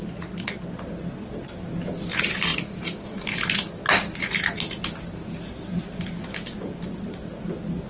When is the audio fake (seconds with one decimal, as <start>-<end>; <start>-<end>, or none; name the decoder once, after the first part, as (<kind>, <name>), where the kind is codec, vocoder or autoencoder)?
none